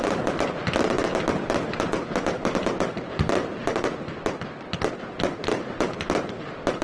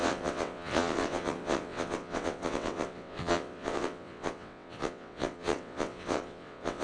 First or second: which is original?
first